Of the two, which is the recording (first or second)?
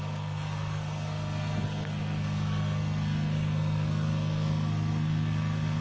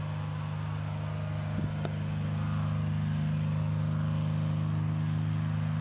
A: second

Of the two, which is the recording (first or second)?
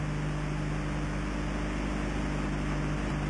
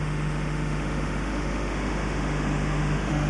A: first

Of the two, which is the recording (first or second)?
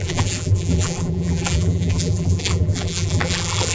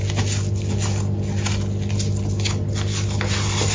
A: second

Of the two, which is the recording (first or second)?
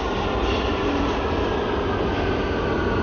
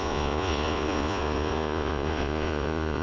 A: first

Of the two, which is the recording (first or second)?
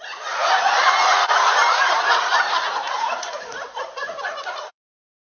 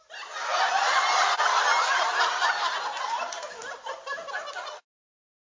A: second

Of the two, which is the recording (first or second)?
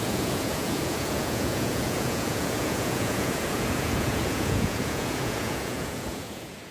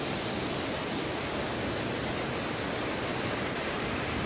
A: second